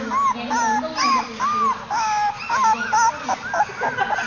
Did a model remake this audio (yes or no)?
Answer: no